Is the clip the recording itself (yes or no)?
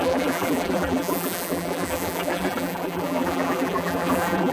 no